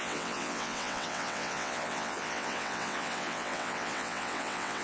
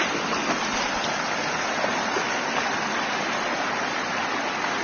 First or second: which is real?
second